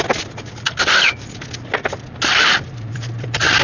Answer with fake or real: real